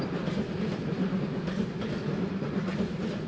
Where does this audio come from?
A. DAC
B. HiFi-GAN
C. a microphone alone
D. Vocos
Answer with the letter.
C